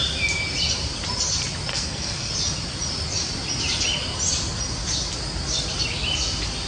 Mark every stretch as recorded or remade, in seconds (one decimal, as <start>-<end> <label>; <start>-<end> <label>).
0.0-1.7 recorded; 1.7-2.3 remade; 2.3-6.7 recorded